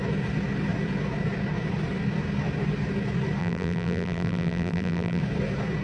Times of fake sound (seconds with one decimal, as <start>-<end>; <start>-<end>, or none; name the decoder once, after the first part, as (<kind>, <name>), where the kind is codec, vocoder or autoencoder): 3.4-5.2 (vocoder, BigVGAN v2)